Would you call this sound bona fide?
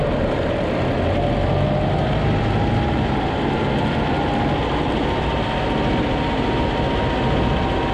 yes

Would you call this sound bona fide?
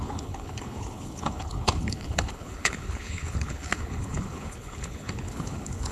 no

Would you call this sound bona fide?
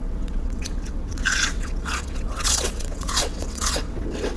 no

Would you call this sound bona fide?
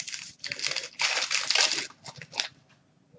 yes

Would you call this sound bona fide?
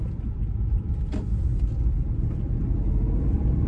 no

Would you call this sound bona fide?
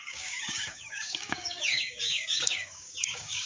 no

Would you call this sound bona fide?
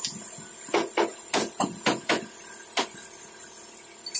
yes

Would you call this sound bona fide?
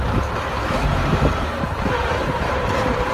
no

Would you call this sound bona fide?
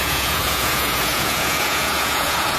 no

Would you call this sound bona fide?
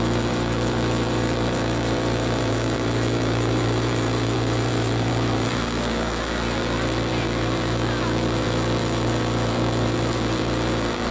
no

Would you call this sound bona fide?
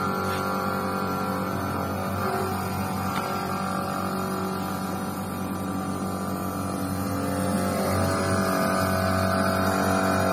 yes